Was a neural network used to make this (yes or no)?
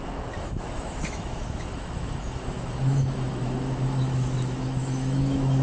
yes